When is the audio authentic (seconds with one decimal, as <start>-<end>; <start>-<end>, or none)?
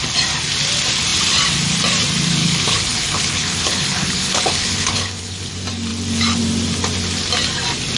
0.0-2.4; 5.5-8.0